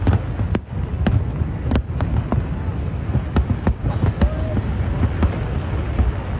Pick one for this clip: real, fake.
real